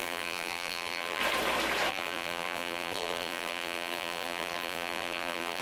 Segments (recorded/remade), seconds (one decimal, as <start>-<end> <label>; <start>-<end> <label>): 0.0-1.2 remade; 1.2-1.9 recorded; 1.9-5.6 remade